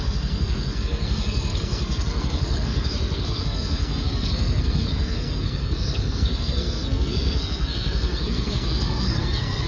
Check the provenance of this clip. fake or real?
fake